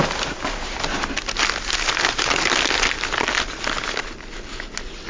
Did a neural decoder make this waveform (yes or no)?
no